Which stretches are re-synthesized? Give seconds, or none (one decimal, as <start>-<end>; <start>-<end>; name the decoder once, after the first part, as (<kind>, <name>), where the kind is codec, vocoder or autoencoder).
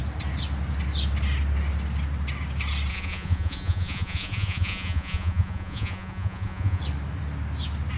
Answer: 2.9-6.8 (vocoder, Vocos)